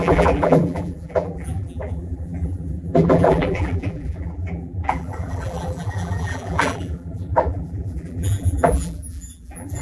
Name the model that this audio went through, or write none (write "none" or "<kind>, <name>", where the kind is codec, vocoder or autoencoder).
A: vocoder, BigVGAN v2